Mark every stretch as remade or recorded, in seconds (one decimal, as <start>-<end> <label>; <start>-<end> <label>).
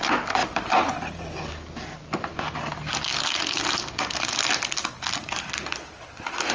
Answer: 0.0-6.5 recorded